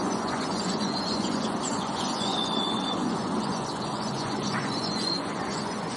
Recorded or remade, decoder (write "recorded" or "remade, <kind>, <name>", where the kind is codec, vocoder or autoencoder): remade, vocoder, Vocos